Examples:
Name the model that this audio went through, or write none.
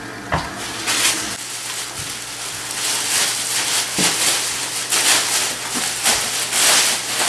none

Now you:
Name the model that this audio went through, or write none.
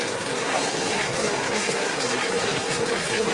codec, SNAC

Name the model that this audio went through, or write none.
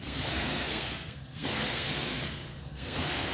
codec, SNAC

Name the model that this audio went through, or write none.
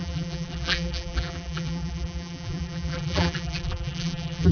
vocoder, BigVGAN v2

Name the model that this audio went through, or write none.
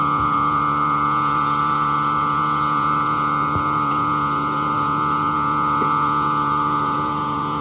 vocoder, Vocos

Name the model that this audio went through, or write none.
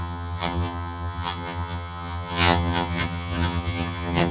vocoder, HiFi-GAN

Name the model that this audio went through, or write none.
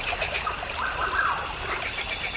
none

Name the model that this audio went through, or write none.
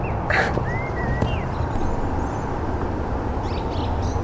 none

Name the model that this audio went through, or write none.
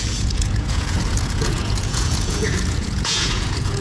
vocoder, Vocos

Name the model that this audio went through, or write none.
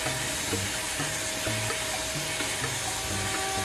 none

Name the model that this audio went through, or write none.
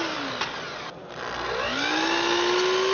none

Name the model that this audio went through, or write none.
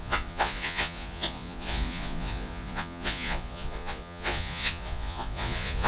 vocoder, Vocos